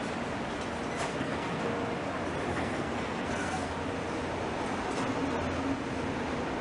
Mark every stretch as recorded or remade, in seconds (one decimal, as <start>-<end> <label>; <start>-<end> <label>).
0.0-1.1 recorded; 1.1-1.7 remade; 1.7-2.5 recorded; 2.5-3.7 remade; 3.7-6.6 recorded